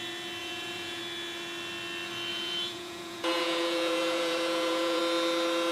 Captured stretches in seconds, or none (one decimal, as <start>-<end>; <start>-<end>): 0.0-0.4; 1.0-2.3; 5.0-5.7